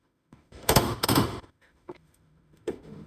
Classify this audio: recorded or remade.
remade